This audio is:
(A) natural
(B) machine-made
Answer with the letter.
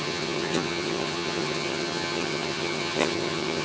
B